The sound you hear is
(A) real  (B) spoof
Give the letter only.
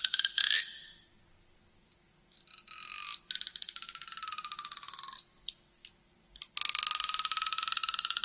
A